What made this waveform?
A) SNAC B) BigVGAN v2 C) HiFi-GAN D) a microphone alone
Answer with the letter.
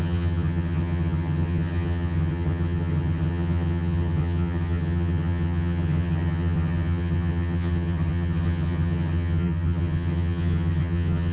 C